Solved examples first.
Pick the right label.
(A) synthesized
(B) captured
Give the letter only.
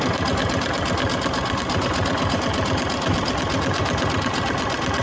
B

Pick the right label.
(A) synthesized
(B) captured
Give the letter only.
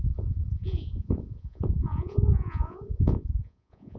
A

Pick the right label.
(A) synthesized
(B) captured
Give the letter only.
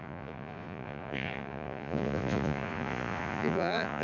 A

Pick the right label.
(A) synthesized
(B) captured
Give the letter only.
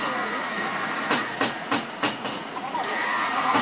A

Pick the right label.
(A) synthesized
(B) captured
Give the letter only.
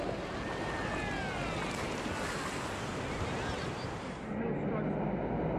B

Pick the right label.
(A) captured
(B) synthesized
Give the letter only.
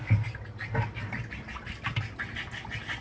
A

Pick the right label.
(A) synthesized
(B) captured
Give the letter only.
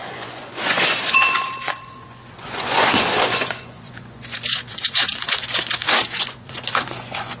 A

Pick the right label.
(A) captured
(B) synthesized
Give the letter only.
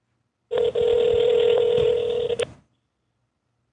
A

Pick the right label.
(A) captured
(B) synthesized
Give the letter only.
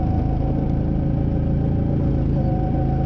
A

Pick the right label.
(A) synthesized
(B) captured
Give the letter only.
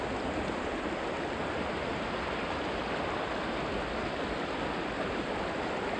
B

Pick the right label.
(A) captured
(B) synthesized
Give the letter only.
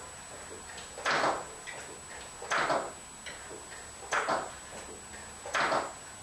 A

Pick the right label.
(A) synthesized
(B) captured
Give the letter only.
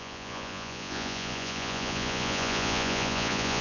A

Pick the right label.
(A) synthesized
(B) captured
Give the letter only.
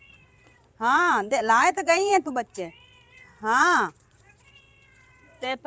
A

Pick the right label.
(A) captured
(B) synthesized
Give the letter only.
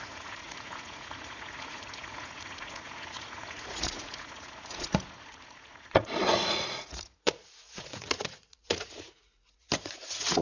B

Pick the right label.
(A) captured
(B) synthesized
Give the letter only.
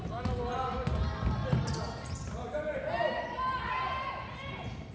A